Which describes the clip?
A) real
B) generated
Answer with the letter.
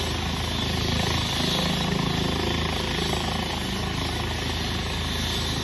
A